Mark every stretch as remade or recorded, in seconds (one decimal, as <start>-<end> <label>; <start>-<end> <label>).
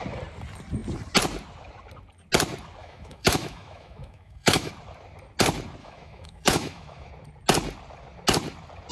0.0-2.8 recorded; 2.8-4.7 remade; 4.7-5.8 recorded; 5.8-7.1 remade; 7.1-8.9 recorded